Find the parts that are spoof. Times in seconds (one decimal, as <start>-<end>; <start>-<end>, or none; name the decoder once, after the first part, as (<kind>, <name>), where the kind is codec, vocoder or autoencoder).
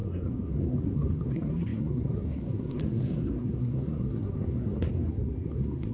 0.0-5.9 (codec, SNAC)